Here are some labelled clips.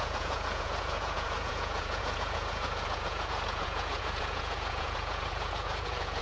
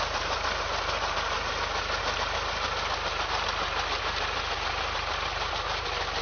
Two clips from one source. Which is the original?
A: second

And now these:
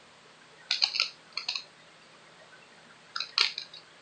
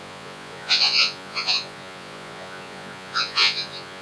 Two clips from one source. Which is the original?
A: first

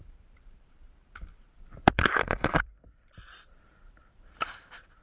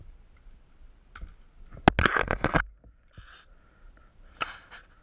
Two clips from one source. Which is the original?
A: second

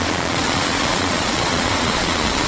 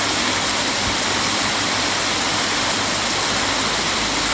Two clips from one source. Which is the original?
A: second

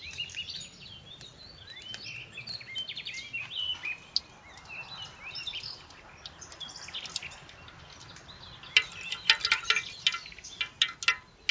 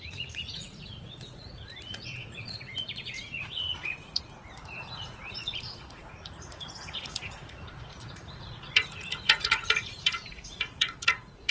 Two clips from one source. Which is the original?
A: first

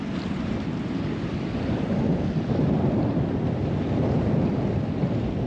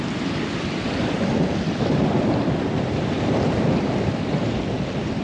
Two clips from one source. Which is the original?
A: first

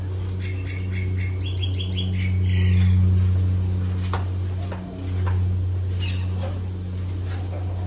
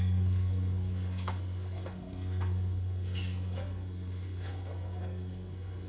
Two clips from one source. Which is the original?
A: first